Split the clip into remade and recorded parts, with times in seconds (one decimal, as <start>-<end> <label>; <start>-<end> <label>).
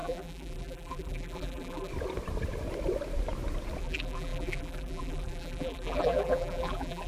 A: 0.0-1.9 remade; 1.9-3.8 recorded; 3.8-7.1 remade